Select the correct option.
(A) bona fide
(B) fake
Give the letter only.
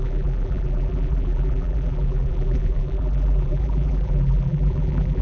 B